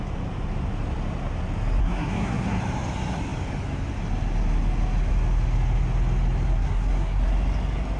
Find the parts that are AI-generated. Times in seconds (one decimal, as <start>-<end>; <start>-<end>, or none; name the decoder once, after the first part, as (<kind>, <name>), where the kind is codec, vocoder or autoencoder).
1.8-2.6 (codec, SNAC); 6.5-7.2